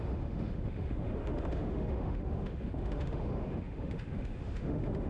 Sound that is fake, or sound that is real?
fake